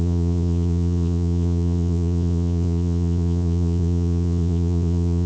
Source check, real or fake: fake